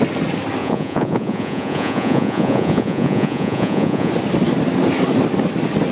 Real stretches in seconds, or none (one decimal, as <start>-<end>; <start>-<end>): 0.0-0.6; 4.1-5.9